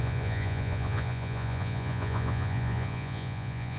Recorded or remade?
remade